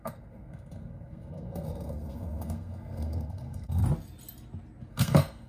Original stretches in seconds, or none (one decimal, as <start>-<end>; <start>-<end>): 3.8-4.9